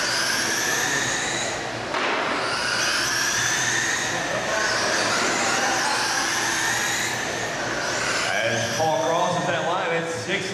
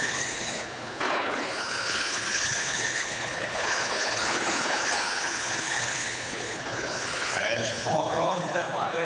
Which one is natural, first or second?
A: first